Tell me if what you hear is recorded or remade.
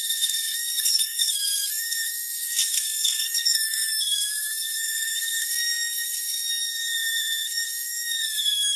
remade